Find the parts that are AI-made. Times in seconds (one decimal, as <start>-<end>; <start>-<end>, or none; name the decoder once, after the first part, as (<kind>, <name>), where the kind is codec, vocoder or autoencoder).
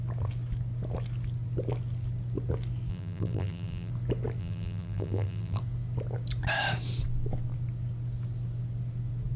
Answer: 2.9-3.9 (vocoder, BigVGAN v2); 4.4-5.6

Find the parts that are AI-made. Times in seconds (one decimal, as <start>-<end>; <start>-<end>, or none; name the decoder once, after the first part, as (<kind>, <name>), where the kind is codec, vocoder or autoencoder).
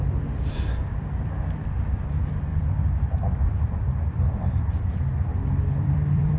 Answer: 2.5-6.4 (vocoder, BigVGAN v2)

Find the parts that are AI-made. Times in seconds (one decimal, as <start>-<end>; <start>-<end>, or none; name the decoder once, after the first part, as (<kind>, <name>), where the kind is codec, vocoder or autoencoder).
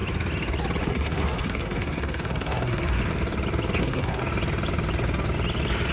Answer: 0.8-3.0 (codec, SNAC); 3.8-4.2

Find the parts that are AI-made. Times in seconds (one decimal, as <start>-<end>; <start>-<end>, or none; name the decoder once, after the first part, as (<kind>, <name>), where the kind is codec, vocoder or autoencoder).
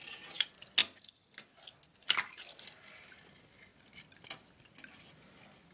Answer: 3.7-5.1 (vocoder, BigVGAN v2)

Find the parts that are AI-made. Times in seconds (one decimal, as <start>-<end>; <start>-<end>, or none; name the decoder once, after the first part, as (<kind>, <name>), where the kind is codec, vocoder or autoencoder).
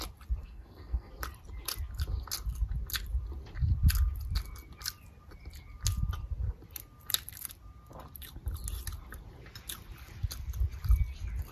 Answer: 0.4-1.1 (codec, SNAC)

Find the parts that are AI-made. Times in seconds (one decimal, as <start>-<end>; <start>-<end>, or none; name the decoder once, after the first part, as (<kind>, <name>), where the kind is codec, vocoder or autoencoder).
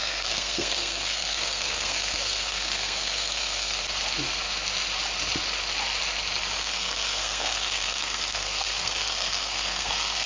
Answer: 0.0-3.8 (codec, SNAC); 6.6-10.3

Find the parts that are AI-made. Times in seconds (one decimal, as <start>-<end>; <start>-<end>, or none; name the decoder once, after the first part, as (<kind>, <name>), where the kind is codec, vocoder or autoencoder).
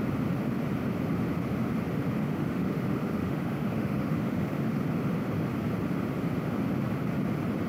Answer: 2.2-4.8 (autoencoder, DAC-VAE)